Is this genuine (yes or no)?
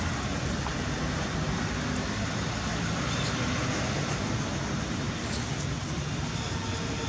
yes